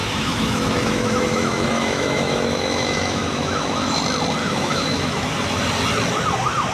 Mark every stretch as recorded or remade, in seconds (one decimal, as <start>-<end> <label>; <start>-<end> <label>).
0.0-4.0 remade; 4.0-4.4 recorded; 4.4-5.3 remade; 5.3-6.7 recorded